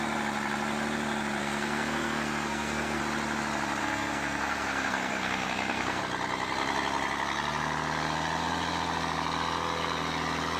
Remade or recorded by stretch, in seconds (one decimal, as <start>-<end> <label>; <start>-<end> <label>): 0.0-1.4 recorded; 1.4-3.0 remade; 3.0-3.8 recorded; 3.8-6.0 remade; 6.0-10.6 recorded